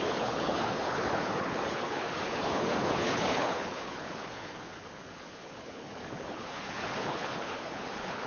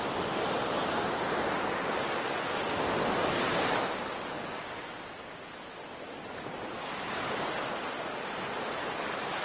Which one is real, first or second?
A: second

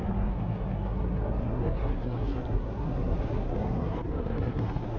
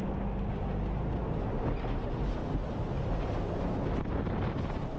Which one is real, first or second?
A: second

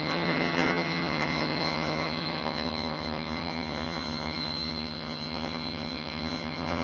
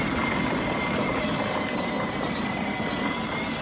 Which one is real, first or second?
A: second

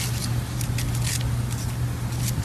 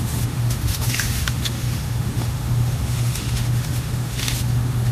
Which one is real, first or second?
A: first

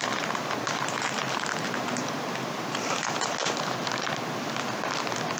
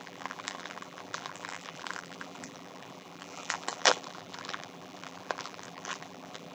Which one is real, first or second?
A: first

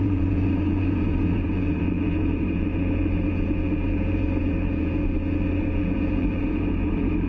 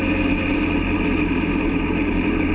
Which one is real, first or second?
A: second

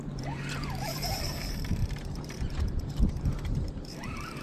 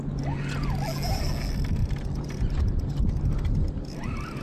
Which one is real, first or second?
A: second